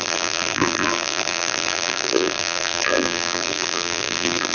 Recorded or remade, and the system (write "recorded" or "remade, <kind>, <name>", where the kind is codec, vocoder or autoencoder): remade, vocoder, BigVGAN v2